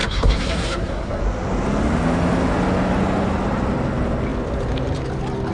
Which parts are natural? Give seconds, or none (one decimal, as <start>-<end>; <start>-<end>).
1.2-5.5